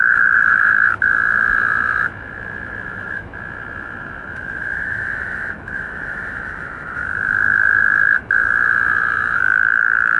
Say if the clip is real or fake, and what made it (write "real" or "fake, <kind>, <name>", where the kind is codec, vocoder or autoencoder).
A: fake, autoencoder, DAC-VAE